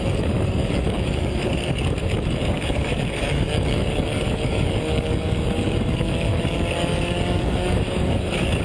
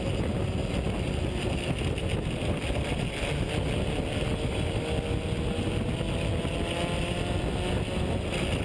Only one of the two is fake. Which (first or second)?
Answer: first